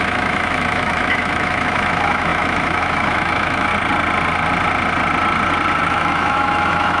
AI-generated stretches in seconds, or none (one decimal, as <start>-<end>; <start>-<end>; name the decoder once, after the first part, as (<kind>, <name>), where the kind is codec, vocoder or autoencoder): 0.0-3.7 (autoencoder, DAC-VAE); 5.8-7.0